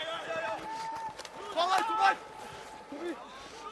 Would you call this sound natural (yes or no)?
yes